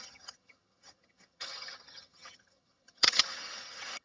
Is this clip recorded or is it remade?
remade